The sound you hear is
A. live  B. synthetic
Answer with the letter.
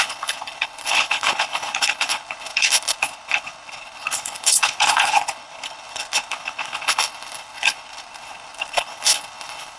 B